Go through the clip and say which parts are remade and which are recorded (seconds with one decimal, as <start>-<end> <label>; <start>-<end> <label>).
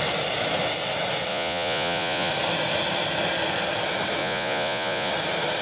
0.0-1.3 recorded; 1.3-2.3 remade; 2.3-4.2 recorded; 4.2-5.1 remade; 5.1-5.6 recorded